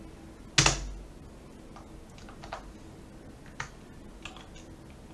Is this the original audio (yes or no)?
yes